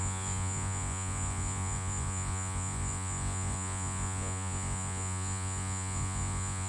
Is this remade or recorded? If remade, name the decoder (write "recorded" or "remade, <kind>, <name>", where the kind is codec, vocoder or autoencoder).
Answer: remade, vocoder, Vocos